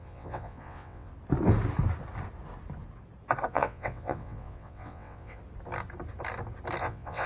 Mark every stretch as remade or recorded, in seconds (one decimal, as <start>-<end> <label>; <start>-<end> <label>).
0.0-1.1 remade; 1.1-3.5 recorded; 3.5-5.4 remade; 5.4-6.8 recorded; 6.8-7.3 remade